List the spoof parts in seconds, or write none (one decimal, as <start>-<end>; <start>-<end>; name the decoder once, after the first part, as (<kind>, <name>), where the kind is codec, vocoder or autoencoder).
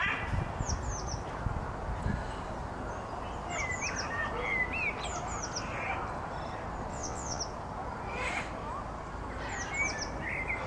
6.9-7.4 (vocoder, WaveNeXt)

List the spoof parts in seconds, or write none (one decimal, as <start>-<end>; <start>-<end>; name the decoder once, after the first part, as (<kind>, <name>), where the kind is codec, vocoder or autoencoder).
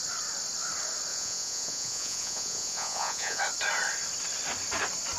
1.1-3.4 (vocoder, Vocos)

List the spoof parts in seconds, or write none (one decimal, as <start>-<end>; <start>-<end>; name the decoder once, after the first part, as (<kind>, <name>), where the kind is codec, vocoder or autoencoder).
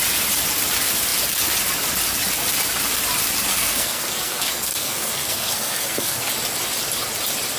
3.5-6.3 (codec, SNAC)